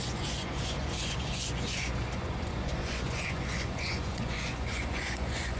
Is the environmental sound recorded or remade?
remade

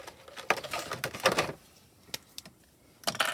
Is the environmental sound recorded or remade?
recorded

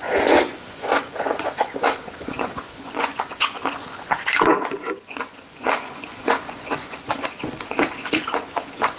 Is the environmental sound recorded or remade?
remade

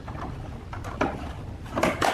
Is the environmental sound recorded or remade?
recorded